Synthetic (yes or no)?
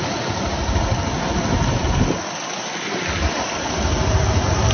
no